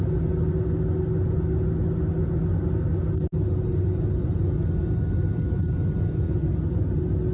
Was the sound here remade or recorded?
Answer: recorded